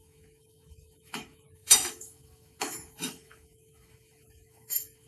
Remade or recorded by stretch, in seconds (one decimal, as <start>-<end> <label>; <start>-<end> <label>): 0.0-5.1 remade